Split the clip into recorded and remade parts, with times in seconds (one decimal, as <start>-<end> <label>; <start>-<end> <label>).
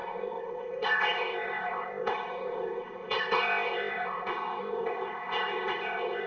0.0-6.3 remade